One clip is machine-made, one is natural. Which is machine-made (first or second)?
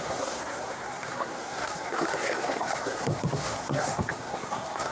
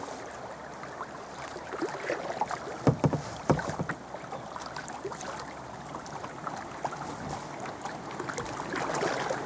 first